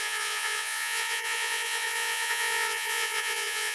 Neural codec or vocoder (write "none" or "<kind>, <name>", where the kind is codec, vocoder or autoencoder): vocoder, Vocos